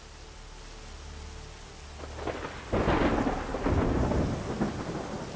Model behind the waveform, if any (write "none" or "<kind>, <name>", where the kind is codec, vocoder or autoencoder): none